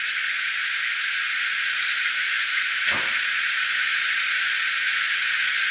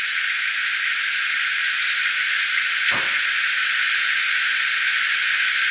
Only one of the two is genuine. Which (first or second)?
second